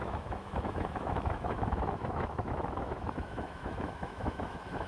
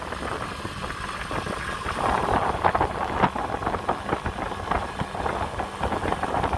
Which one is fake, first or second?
first